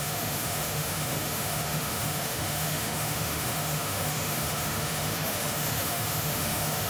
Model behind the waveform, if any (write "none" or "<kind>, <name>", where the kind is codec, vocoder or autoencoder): autoencoder, DAC-VAE